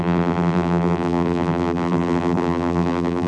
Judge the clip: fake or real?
fake